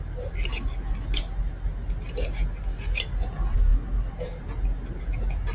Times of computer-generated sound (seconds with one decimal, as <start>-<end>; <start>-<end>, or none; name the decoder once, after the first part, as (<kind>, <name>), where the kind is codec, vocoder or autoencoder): none